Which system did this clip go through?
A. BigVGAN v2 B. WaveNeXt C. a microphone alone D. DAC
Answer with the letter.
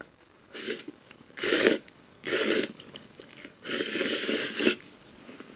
D